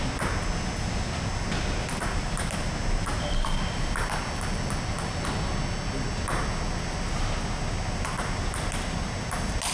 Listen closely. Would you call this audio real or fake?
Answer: real